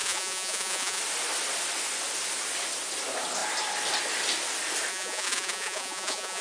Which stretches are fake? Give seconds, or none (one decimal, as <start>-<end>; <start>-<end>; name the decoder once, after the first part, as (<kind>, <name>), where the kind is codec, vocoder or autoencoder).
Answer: 0.0-1.0 (vocoder, Vocos); 4.9-6.4